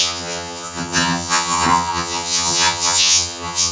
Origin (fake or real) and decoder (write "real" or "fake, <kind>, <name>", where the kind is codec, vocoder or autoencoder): fake, vocoder, HiFi-GAN